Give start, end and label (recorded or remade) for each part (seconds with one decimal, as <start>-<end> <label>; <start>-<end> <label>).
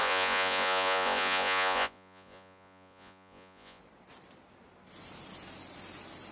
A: 0.0-3.8 remade; 3.8-6.3 recorded